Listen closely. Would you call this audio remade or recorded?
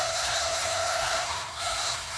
remade